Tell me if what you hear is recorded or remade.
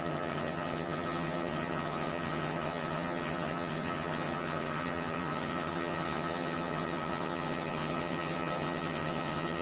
remade